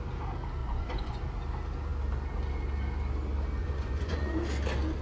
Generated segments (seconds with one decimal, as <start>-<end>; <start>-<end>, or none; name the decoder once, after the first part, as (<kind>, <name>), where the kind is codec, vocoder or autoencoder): 0.6-1.2 (vocoder, Vocos); 3.6-4.3